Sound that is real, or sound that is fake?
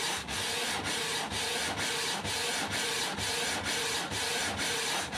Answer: real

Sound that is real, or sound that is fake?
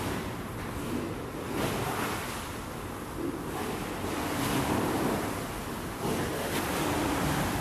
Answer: real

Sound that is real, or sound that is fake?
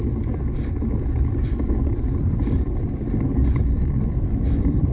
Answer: real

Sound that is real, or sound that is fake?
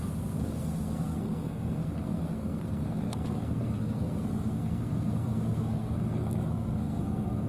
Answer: fake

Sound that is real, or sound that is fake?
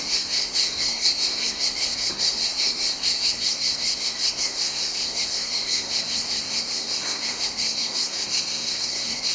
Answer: fake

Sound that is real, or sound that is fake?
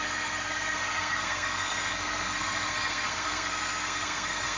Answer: fake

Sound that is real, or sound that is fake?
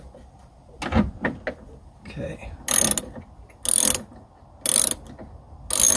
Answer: real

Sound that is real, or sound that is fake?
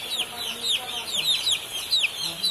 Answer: real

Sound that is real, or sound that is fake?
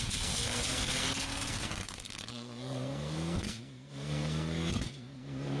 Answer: fake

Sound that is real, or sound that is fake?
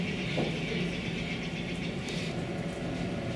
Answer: real